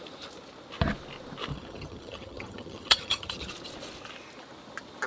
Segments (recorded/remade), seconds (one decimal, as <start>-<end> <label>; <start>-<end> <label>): 0.0-1.5 recorded; 1.5-3.5 remade; 3.5-5.1 recorded